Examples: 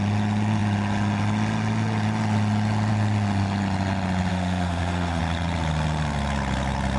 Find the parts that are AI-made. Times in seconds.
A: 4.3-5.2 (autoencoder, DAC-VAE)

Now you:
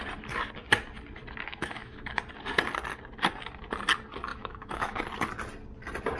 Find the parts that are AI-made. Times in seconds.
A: 1.5-2.2 (autoencoder, DAC-VAE); 4.3-5.0

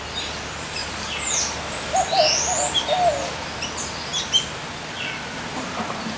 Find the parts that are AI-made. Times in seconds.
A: none

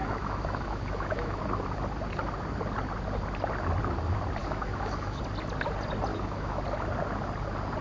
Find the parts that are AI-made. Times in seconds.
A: 0.0-1.4 (autoencoder, DAC-VAE); 4.4-5.2; 6.1-6.6